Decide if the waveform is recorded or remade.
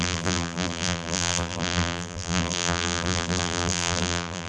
remade